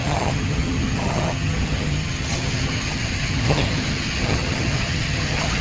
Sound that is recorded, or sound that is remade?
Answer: remade